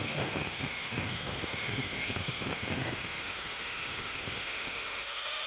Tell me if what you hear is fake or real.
fake